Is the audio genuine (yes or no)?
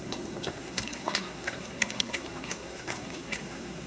no